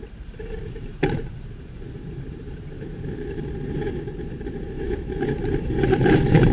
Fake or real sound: fake